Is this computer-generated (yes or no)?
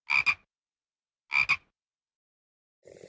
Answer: no